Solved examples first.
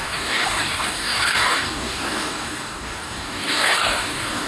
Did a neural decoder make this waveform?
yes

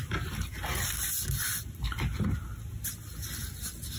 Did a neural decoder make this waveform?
no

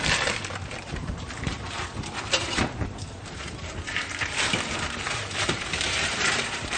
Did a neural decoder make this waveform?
yes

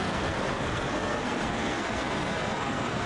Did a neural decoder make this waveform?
yes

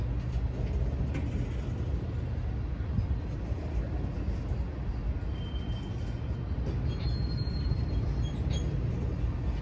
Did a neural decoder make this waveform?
no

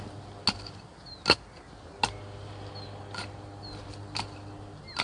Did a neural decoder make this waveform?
no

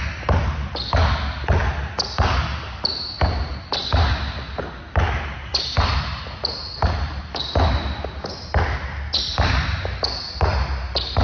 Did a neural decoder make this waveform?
no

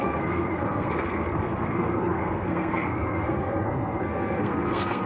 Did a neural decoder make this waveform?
yes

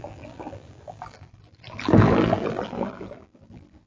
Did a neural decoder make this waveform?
yes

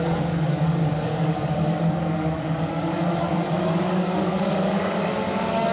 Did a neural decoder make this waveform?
yes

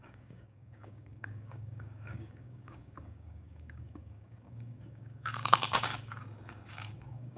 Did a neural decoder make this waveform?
yes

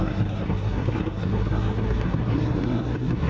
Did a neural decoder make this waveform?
yes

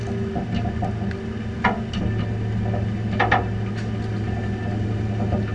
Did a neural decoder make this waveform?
no